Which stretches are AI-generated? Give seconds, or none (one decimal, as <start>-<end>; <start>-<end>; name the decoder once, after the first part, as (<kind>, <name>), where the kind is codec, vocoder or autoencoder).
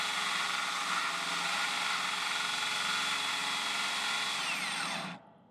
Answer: none